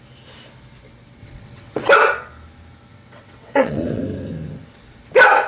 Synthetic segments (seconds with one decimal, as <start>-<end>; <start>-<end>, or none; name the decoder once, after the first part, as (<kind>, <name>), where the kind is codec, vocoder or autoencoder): 1.2-1.9 (vocoder, WaveNeXt); 2.9-4.0